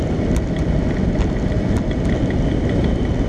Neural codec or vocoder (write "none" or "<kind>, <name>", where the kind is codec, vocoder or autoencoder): none